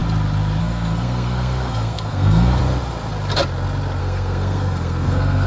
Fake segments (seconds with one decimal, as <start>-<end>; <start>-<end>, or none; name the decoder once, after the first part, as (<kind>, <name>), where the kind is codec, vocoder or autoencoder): 0.6-2.6 (codec, SNAC); 4.0-5.5

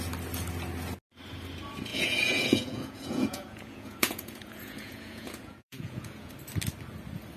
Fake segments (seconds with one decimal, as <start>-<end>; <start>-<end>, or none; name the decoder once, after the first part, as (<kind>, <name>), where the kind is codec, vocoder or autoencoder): 1.9-6.3 (vocoder, Vocos)

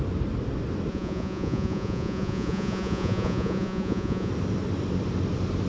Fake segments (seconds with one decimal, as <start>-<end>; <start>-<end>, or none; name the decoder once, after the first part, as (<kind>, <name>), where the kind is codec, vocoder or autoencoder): 0.9-4.3 (vocoder, Vocos)

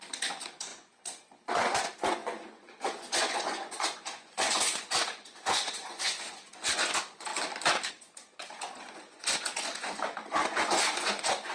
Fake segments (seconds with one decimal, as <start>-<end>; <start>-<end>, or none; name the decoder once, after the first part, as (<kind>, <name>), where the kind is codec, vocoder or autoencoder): 0.0-7.3 (vocoder, Vocos); 7.9-11.5

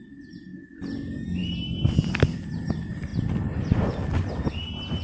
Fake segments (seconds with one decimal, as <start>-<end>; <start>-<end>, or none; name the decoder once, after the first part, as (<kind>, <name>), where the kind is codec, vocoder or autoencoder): none

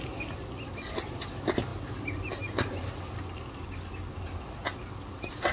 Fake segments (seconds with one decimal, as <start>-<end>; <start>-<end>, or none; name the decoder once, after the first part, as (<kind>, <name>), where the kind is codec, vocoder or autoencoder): none